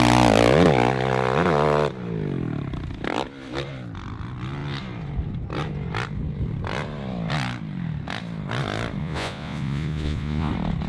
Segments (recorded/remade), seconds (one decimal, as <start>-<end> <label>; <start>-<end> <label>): 0.0-9.0 recorded; 9.0-10.5 remade; 10.5-10.9 recorded

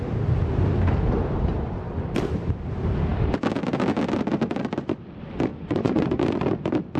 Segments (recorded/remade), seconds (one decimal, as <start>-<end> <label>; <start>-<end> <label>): 0.0-5.5 recorded; 5.5-6.2 remade; 6.2-7.0 recorded